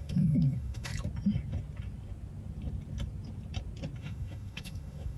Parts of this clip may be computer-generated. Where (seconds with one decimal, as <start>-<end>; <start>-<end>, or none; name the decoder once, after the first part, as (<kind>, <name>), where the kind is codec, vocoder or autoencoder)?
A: 0.0-0.9 (autoencoder, DAC-VAE); 4.0-5.2